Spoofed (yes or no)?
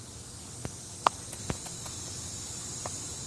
no